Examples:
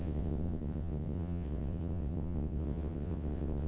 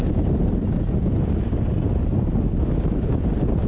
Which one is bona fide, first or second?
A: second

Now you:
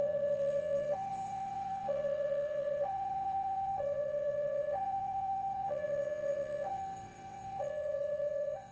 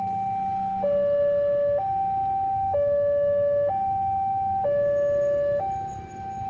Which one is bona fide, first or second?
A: second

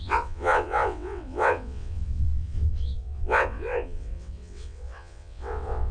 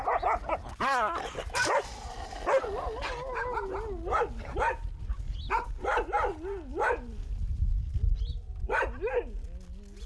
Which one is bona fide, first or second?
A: second